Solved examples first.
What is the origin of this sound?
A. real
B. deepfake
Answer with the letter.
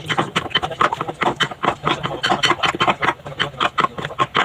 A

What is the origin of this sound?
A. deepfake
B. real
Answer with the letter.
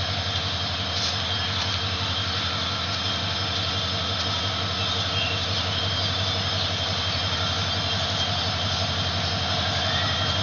B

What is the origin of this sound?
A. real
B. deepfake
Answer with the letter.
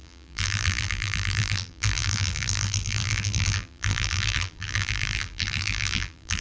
B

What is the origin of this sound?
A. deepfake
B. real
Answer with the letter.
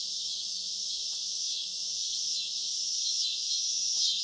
A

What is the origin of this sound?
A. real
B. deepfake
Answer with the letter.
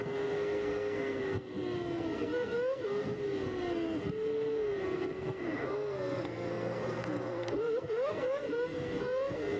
B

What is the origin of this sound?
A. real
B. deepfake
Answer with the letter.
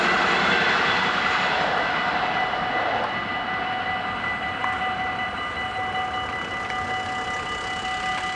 A